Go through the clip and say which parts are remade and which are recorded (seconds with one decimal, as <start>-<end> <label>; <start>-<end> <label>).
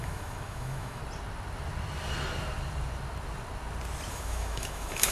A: 0.0-1.0 remade; 1.0-4.1 recorded; 4.1-5.1 remade